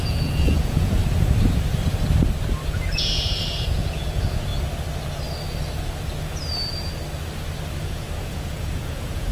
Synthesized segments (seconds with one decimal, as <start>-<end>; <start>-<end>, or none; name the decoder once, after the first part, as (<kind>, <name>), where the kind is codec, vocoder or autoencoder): 0.0-1.0 (vocoder, Vocos); 2.7-4.5; 7.8-9.3